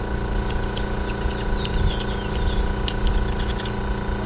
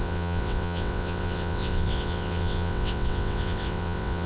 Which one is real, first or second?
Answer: first